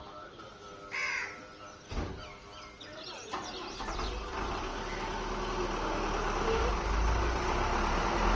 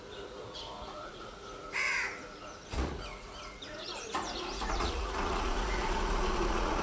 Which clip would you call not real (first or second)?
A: second